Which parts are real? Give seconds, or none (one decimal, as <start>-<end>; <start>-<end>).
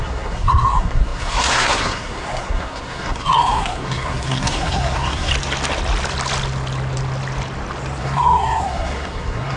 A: 5.3-8.0